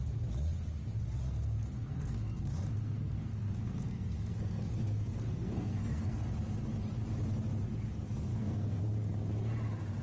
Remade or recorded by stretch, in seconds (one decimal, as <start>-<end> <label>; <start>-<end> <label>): 0.0-1.2 recorded; 1.2-6.2 remade; 6.2-8.3 recorded; 8.3-8.8 remade; 8.8-10.0 recorded